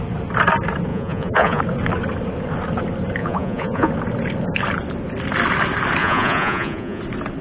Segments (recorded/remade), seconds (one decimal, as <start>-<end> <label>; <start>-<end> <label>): 0.0-0.9 recorded; 0.9-1.6 remade; 1.6-3.2 recorded; 3.2-3.9 remade; 3.9-6.0 recorded; 6.0-7.0 remade; 7.0-7.4 recorded